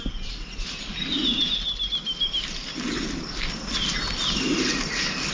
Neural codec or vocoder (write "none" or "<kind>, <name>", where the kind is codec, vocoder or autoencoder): none